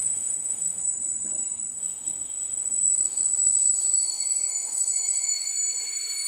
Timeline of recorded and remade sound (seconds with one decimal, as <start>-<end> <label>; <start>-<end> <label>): 0.0-0.8 remade; 0.8-1.7 recorded; 1.7-5.5 remade; 5.5-6.3 recorded